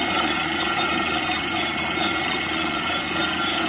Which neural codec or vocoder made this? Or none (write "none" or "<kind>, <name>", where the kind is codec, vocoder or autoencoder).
vocoder, Vocos